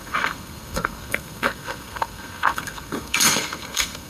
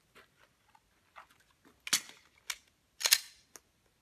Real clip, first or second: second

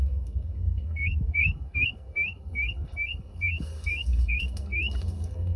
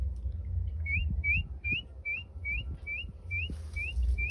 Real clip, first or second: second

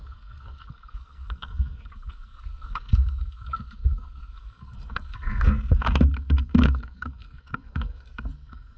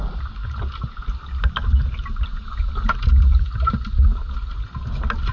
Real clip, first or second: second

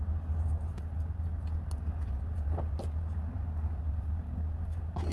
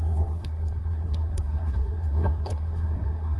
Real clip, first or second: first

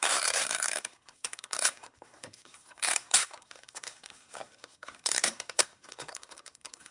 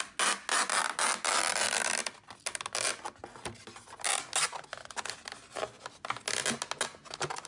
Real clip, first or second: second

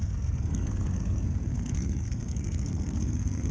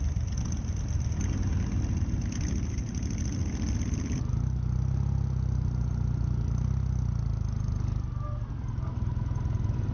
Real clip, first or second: second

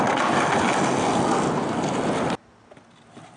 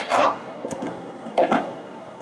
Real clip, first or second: first